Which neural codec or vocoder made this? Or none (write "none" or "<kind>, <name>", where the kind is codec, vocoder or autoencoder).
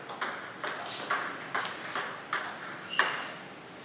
none